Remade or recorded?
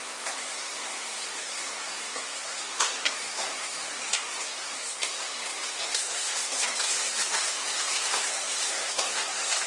remade